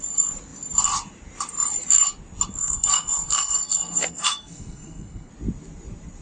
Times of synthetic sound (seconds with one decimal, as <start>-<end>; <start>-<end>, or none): 2.6-5.3